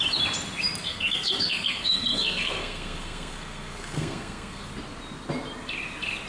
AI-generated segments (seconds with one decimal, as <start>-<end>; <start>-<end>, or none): 0.9-4.7